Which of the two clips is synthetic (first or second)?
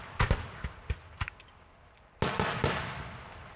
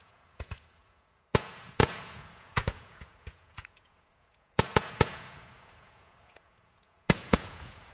second